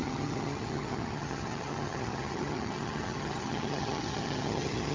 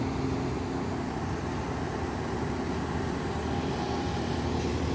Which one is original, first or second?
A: second